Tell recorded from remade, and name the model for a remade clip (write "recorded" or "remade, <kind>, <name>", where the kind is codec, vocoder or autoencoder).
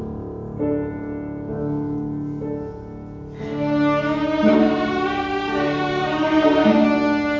recorded